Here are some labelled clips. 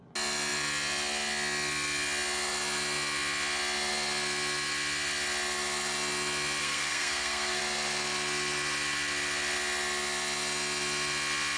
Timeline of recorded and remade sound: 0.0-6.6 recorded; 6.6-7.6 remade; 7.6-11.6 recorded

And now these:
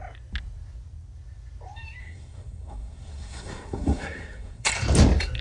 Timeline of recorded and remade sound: 0.0-2.0 recorded; 2.0-4.7 remade; 4.7-5.4 recorded